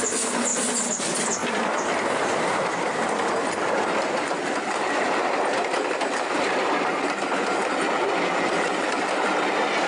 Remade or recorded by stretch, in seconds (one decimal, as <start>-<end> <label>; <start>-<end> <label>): 0.0-9.9 recorded